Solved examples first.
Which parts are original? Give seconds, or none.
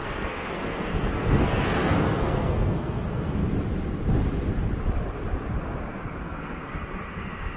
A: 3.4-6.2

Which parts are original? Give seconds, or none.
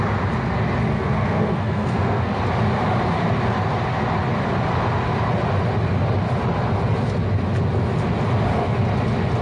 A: 0.0-0.9; 2.4-9.4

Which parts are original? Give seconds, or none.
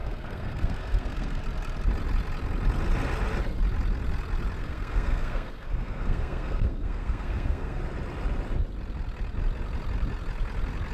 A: 1.4-4.6; 7.8-10.9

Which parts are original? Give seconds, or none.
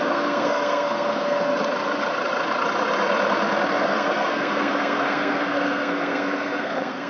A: 1.5-3.8